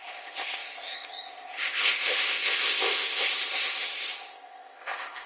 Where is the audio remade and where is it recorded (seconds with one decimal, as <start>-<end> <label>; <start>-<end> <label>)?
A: 0.0-5.3 remade